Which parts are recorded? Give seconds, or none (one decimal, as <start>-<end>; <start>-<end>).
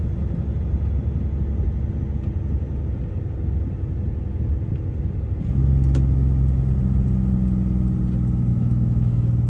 0.0-8.5; 9.1-9.5